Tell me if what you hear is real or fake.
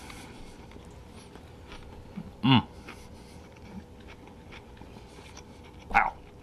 real